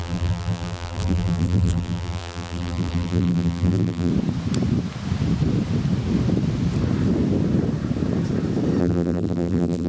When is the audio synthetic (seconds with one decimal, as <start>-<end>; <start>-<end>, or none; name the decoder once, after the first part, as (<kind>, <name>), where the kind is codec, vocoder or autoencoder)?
0.0-4.1 (vocoder, BigVGAN v2); 8.8-9.9